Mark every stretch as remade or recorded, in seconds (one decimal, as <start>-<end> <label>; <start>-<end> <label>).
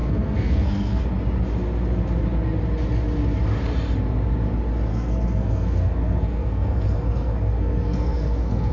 0.0-1.0 remade; 1.0-4.9 recorded; 4.9-8.7 remade